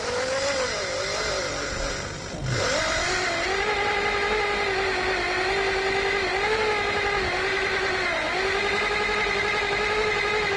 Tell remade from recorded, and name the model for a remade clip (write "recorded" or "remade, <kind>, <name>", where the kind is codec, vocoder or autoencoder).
recorded